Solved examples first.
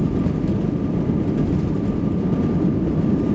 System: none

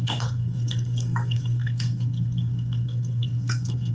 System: codec, SNAC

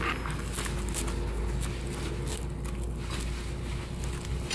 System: none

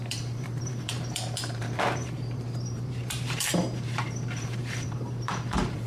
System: vocoder, BigVGAN v2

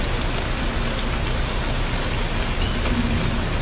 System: none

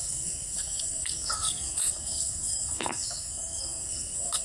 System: codec, SNAC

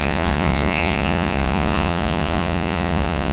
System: vocoder, Vocos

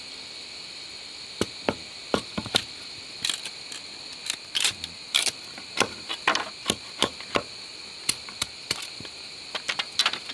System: none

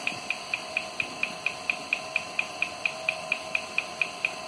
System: none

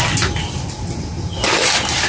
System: none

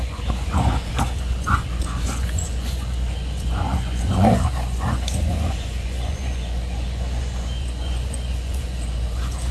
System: vocoder, Vocos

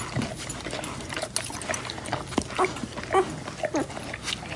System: none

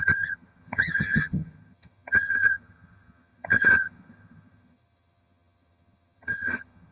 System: vocoder, HiFi-GAN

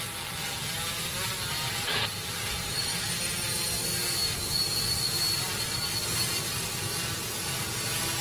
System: none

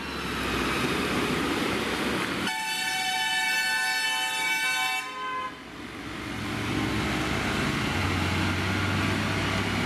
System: none